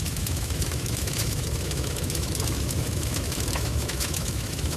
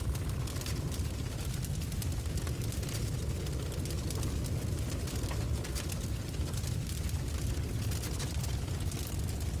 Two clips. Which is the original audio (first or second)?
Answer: second